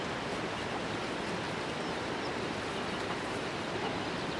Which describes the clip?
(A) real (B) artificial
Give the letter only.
A